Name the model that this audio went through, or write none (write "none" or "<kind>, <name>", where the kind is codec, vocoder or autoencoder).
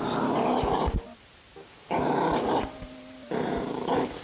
vocoder, BigVGAN v2